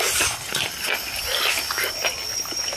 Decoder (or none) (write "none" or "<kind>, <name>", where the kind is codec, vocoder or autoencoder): none